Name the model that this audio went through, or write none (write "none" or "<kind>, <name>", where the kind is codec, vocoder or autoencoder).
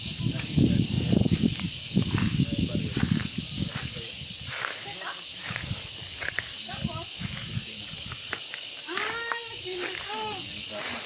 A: codec, DAC